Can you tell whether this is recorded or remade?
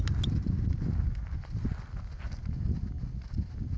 recorded